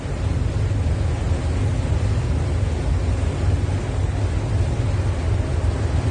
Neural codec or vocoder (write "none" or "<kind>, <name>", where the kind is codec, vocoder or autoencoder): none